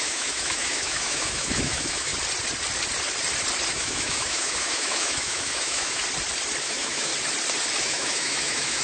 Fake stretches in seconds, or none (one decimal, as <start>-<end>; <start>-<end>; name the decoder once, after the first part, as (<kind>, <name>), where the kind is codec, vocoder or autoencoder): 0.0-2.1 (autoencoder, DAC-VAE); 3.7-6.0; 6.6-7.1; 7.8-8.8